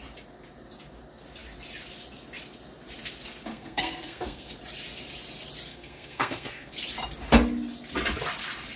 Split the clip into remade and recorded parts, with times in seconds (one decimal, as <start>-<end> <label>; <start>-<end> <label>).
0.0-3.5 recorded; 3.5-4.5 remade; 4.5-5.7 recorded; 5.7-6.7 remade; 6.7-8.8 recorded